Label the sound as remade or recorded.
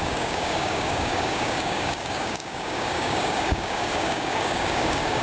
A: remade